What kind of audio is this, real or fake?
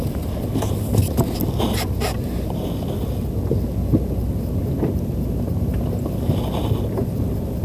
real